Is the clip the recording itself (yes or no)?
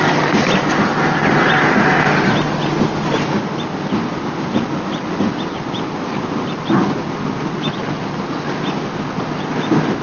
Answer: yes